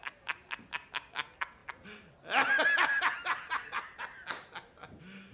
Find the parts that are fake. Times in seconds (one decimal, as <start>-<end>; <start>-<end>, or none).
none